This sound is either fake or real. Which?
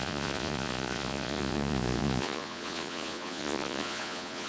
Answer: fake